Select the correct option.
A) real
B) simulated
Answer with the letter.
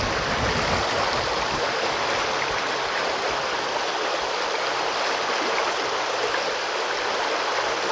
A